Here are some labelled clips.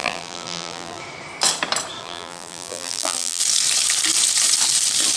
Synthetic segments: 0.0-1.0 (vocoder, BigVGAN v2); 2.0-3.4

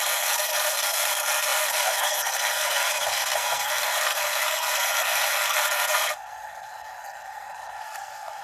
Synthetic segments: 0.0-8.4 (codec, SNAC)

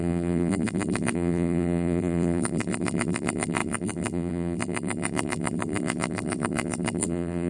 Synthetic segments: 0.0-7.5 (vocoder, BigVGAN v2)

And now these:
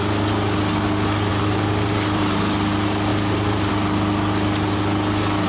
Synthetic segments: 1.3-2.4 (vocoder, BigVGAN v2); 3.1-3.7

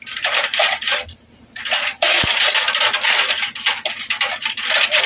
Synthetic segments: 0.0-1.9 (vocoder, BigVGAN v2)